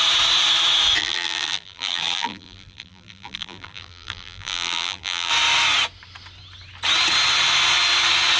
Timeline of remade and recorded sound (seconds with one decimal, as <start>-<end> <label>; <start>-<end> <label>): 0.0-1.0 recorded; 1.0-5.3 remade; 5.3-8.4 recorded